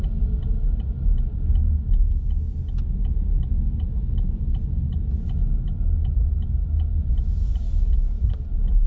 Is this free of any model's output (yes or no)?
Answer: yes